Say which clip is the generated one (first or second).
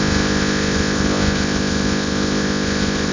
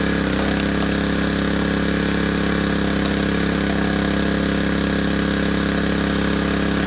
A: first